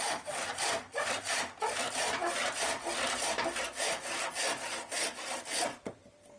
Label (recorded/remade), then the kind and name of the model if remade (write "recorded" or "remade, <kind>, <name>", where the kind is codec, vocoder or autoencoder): recorded